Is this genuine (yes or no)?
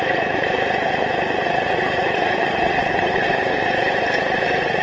no